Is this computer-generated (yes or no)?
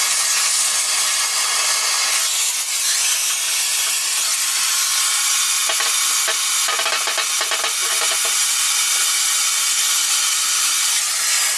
no